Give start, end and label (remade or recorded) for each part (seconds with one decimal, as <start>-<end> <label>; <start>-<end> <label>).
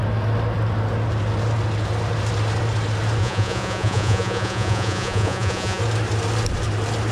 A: 0.0-3.2 recorded; 3.2-5.8 remade; 5.8-7.1 recorded